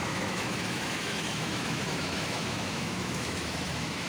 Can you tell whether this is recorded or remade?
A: remade